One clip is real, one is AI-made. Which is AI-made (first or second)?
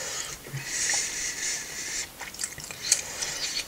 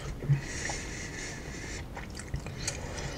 first